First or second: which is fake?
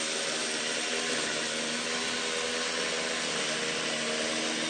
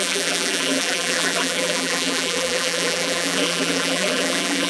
second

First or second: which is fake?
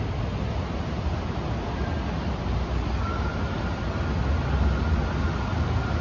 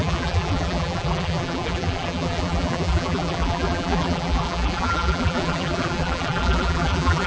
second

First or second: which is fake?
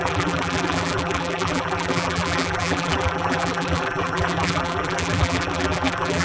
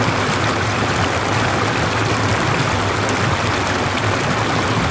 first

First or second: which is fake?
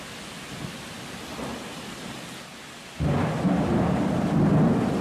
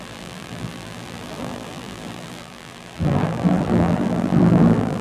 second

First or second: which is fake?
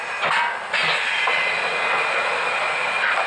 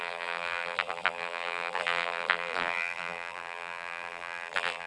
second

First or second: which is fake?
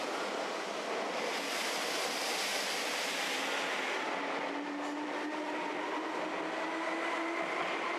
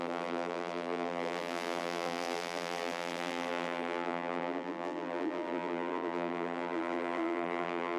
second